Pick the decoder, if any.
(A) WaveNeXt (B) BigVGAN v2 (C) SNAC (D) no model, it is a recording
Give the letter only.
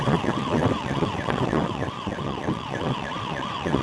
A